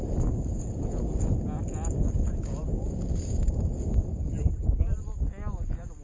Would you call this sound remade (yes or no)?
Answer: no